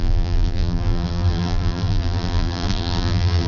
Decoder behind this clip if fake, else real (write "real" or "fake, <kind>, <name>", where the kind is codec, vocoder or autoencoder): fake, vocoder, BigVGAN v2